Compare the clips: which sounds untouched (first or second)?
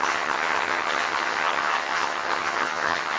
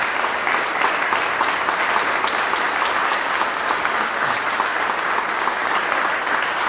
second